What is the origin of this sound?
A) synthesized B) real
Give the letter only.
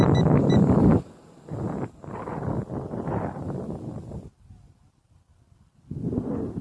B